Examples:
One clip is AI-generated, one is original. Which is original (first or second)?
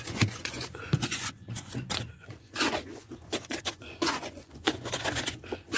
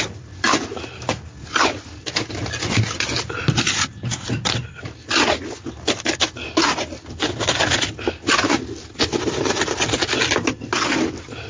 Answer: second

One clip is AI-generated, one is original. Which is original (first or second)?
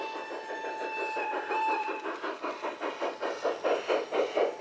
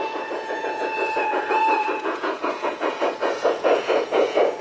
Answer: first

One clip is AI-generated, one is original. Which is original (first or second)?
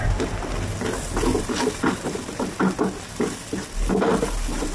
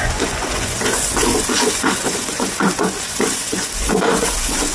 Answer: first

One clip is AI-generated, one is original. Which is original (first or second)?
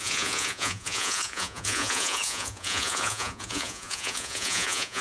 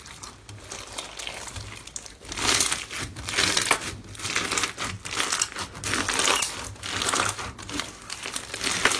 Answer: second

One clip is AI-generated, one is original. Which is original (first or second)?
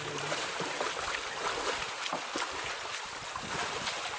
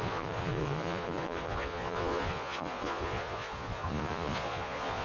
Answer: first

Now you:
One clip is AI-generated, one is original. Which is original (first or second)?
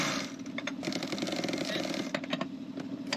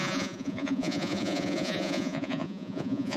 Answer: first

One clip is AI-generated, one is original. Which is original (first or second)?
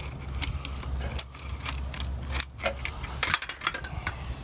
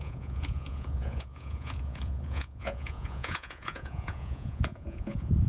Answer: first